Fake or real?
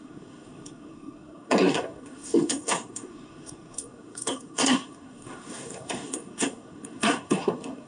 fake